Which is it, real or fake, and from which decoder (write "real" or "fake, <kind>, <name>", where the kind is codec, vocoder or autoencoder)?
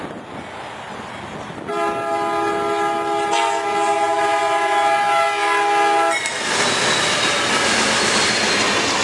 real